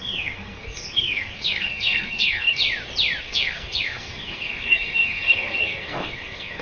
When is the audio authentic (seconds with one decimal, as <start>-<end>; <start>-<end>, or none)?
2.6-3.2